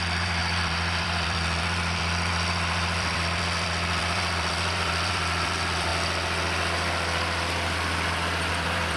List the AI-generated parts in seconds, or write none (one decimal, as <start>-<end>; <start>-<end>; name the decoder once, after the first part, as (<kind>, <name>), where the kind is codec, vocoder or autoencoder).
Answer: 0.0-5.9 (vocoder, BigVGAN v2); 8.5-9.0